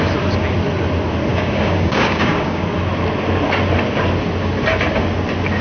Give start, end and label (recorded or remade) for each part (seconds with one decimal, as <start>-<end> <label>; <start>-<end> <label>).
0.0-1.3 recorded; 1.3-2.6 remade; 2.6-5.6 recorded